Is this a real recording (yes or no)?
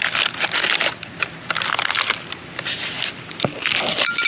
yes